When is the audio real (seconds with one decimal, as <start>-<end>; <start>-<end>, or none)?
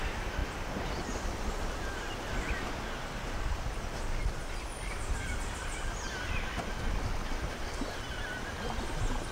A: 0.0-9.3